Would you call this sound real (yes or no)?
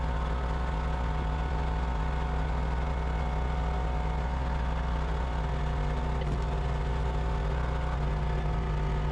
yes